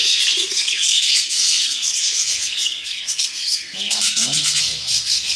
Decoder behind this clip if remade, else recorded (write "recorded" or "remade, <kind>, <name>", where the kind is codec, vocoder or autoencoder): remade, codec, SNAC